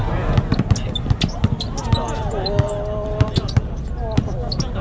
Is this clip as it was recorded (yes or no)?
yes